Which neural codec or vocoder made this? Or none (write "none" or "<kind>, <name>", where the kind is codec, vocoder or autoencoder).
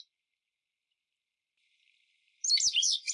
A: none